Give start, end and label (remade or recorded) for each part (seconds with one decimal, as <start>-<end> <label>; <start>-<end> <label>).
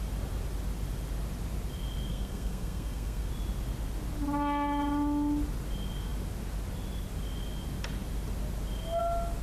0.0-2.1 recorded; 2.1-3.3 remade; 3.3-9.4 recorded